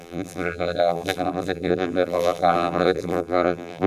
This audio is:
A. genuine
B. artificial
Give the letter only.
B